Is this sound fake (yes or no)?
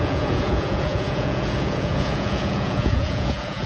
yes